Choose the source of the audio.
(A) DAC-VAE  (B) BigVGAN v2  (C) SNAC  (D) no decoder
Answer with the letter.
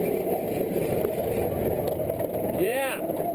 B